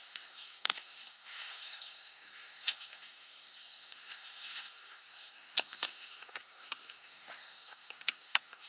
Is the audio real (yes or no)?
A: no